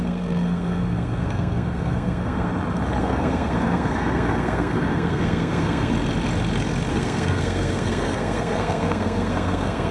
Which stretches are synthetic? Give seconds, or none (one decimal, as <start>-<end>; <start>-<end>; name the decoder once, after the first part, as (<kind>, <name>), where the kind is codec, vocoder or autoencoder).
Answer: 0.0-2.5 (codec, SNAC); 3.0-5.9; 6.9-9.9